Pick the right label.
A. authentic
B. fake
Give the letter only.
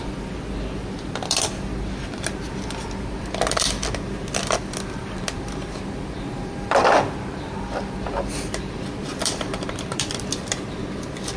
B